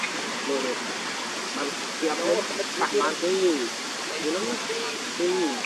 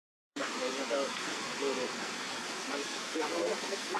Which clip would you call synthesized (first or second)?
second